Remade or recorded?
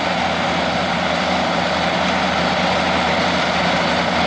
remade